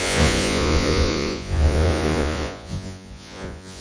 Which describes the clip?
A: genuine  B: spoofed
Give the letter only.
B